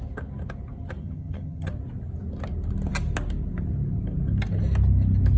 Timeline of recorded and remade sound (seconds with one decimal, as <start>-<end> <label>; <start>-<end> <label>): 0.0-1.0 recorded; 1.0-1.7 remade; 1.7-5.4 recorded